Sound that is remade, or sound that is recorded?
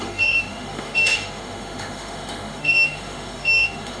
remade